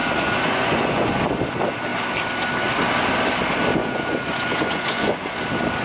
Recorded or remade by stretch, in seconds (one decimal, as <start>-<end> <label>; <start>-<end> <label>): 0.0-1.2 remade; 1.2-3.8 recorded; 3.8-5.3 remade; 5.3-5.8 recorded